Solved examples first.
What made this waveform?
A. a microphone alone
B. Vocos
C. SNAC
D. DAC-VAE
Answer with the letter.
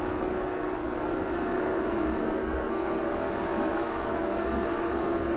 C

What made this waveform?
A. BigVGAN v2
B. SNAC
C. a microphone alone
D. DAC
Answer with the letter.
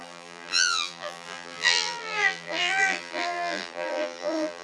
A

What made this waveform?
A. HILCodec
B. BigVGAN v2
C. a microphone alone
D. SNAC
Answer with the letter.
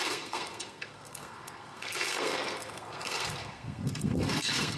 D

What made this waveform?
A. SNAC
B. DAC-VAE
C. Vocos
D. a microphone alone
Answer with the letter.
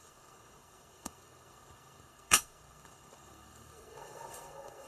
A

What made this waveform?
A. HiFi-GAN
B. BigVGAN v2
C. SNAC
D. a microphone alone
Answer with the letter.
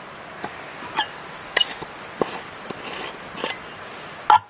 D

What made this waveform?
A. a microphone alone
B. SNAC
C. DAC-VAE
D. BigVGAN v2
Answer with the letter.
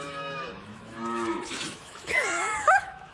C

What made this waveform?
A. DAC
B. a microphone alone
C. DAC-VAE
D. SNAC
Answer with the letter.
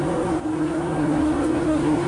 D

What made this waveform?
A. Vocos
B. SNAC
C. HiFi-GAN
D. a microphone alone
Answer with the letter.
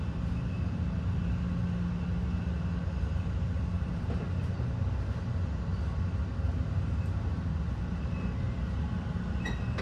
D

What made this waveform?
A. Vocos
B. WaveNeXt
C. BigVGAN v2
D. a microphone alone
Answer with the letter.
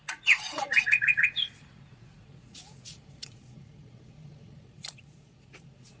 A